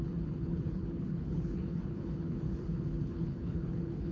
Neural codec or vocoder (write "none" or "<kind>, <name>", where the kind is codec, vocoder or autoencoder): codec, HILCodec